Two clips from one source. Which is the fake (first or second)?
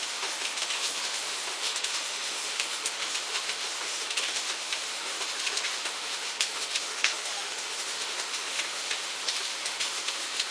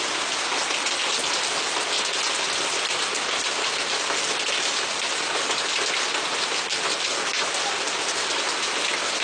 first